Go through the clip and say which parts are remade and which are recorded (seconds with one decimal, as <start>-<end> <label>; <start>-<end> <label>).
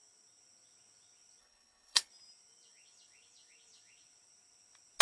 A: 0.0-1.4 recorded; 1.4-2.1 remade; 2.1-5.0 recorded